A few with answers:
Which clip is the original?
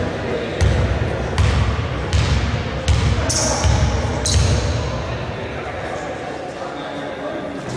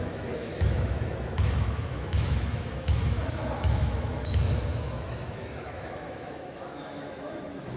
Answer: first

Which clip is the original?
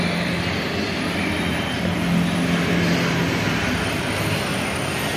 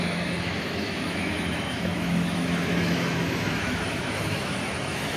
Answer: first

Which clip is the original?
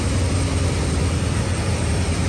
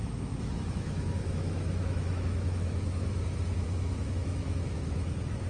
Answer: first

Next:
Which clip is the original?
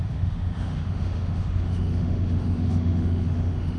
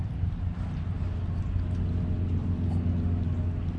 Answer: second